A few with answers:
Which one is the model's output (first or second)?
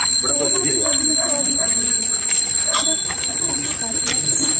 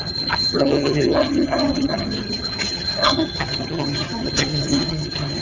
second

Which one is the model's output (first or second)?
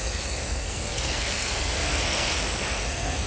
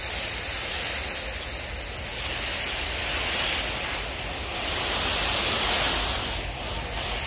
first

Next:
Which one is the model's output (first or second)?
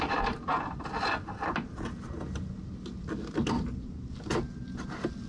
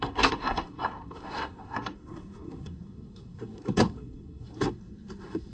second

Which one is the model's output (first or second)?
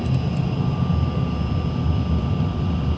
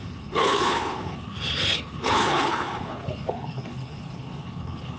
second